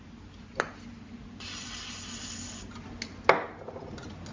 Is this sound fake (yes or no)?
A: no